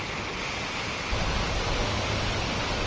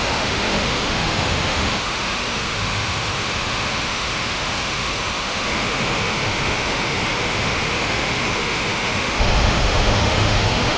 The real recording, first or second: first